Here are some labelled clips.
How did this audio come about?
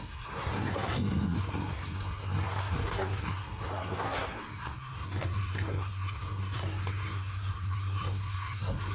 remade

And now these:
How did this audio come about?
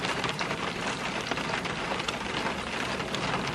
recorded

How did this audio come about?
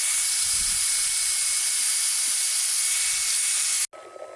recorded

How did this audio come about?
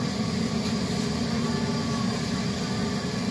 recorded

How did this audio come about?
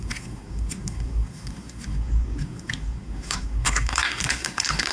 remade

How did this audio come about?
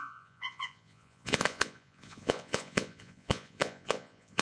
remade